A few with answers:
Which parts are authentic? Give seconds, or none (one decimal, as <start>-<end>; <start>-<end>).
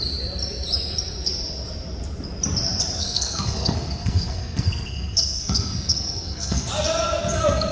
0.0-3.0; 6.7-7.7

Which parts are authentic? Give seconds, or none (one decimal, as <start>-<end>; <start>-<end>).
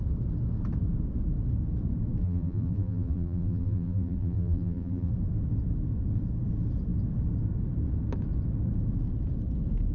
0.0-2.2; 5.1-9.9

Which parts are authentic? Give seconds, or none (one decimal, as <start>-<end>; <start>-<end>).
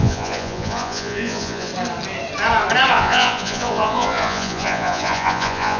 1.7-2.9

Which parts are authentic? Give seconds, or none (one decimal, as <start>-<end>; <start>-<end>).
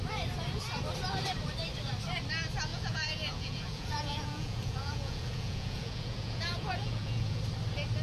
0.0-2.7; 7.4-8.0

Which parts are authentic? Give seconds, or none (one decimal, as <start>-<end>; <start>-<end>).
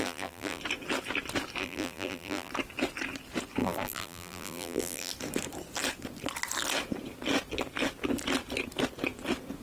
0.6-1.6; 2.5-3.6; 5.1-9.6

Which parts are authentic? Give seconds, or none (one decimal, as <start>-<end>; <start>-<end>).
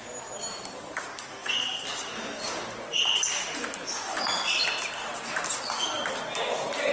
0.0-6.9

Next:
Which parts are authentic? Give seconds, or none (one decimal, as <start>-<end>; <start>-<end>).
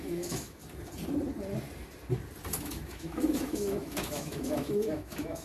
0.6-2.6